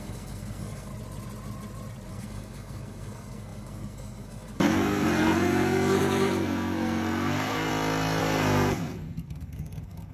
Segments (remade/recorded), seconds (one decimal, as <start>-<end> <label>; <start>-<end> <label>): 0.0-0.9 remade; 0.9-2.1 recorded; 2.1-7.7 remade; 7.7-8.2 recorded; 8.2-10.1 remade